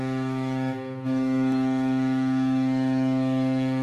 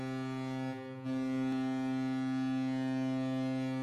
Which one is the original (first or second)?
second